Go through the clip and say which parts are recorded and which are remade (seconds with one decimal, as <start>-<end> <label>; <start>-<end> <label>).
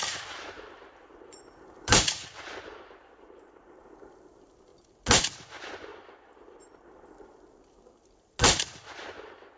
0.0-4.7 remade; 4.7-5.2 recorded; 5.2-5.9 remade; 5.9-9.6 recorded